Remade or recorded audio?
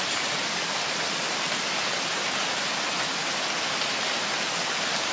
recorded